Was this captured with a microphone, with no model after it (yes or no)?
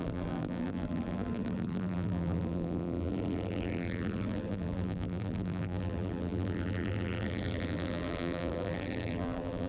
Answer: no